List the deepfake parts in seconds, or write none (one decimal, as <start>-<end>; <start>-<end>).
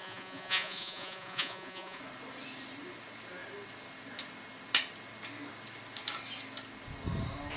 0.0-2.0